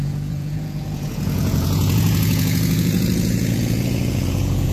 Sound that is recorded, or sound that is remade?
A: remade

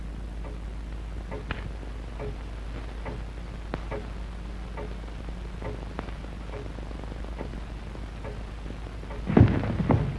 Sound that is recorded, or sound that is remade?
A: recorded